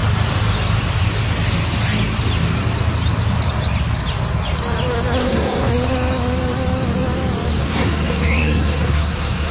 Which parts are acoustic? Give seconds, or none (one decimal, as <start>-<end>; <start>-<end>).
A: 0.0-5.2; 5.7-7.6